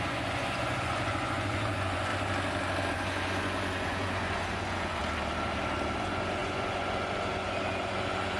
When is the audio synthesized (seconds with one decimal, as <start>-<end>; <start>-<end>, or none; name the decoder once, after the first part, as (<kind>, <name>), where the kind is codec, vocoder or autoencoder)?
0.0-2.1 (vocoder, Vocos); 2.9-5.0; 6.0-8.4